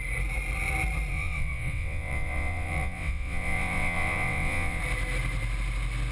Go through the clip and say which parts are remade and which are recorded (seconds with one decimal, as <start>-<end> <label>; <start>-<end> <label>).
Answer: 0.0-1.1 recorded; 1.1-4.8 remade; 4.8-6.1 recorded